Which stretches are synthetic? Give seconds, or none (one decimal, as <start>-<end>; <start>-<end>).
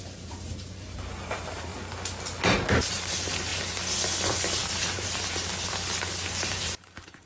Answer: 0.0-1.7; 2.7-3.5; 4.7-5.5; 6.4-7.3